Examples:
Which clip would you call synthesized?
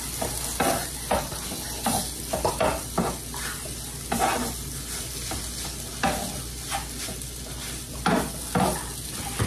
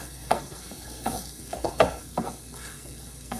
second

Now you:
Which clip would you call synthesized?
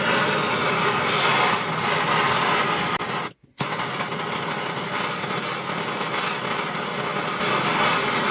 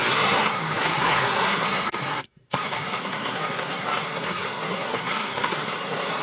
second